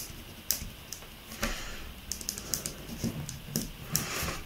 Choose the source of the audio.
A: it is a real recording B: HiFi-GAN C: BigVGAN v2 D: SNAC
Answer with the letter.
A